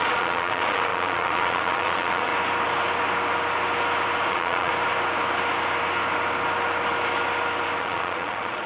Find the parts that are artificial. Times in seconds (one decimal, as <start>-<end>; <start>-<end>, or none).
0.0-2.3; 4.3-4.7; 7.8-8.7